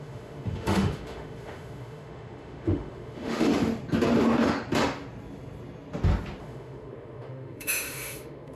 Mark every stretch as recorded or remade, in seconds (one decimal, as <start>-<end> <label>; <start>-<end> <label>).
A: 0.0-3.5 remade; 3.5-6.4 recorded; 6.4-8.6 remade